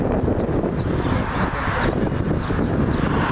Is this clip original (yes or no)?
yes